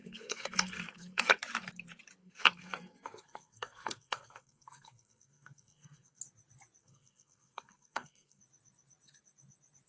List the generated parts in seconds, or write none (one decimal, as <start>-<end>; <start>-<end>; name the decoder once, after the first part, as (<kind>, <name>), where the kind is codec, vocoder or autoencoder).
0.0-1.3 (codec, SNAC); 2.2-6.2; 6.8-8.4